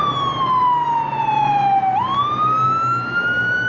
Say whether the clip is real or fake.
real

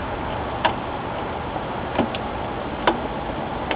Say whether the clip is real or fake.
real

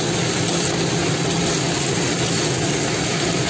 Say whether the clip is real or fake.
real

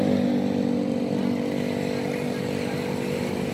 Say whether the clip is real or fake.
real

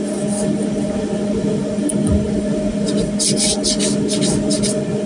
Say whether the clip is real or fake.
real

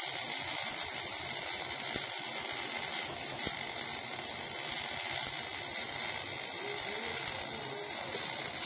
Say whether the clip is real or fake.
real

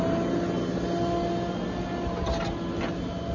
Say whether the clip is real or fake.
real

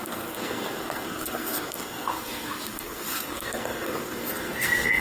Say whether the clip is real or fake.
fake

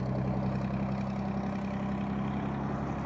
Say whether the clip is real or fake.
real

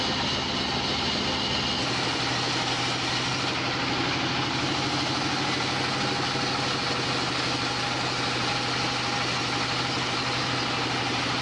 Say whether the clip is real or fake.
real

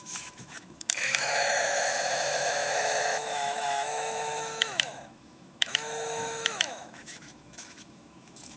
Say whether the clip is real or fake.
fake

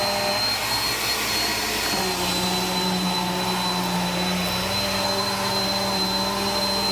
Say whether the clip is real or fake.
real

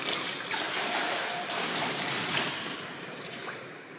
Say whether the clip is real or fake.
fake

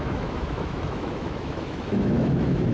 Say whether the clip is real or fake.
fake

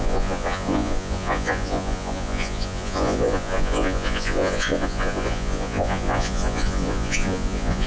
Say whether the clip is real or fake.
fake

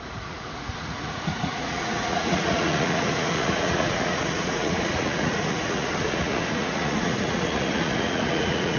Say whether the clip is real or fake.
fake